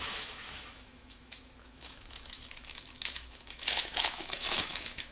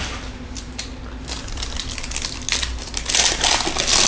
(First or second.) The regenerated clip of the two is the first